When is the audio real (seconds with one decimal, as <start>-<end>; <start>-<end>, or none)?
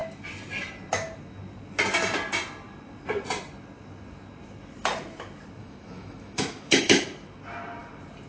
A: 0.0-5.6; 7.0-8.3